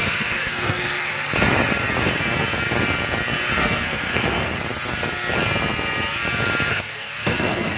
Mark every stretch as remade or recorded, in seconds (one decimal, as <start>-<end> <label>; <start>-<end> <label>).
0.0-1.1 remade; 1.1-3.6 recorded; 3.6-4.5 remade; 4.5-6.7 recorded; 6.7-7.8 remade

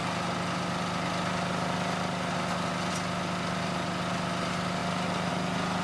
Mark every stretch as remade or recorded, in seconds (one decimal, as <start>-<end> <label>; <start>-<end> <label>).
0.0-5.8 recorded

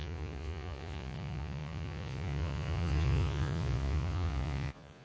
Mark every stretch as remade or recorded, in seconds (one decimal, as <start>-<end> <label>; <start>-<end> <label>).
0.0-5.0 remade

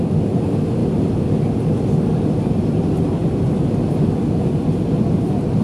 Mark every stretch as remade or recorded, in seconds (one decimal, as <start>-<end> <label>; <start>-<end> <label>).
0.0-5.6 recorded

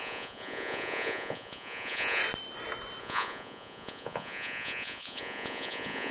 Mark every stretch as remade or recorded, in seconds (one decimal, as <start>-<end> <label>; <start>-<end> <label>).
0.0-2.2 remade; 2.2-3.0 recorded; 3.0-6.1 remade